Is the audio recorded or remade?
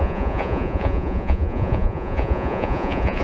remade